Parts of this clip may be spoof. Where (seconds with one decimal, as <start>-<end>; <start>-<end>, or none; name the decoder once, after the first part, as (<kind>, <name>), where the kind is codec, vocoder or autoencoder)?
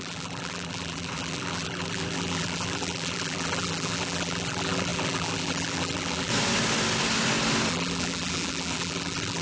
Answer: 0.0-6.3 (vocoder, BigVGAN v2); 7.7-9.4